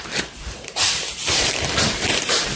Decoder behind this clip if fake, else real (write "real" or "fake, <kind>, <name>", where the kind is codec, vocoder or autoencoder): fake, vocoder, BigVGAN v2